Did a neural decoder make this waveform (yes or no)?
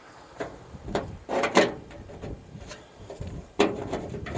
yes